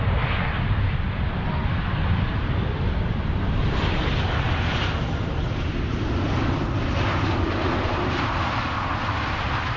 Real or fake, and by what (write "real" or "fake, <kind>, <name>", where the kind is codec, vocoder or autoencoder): real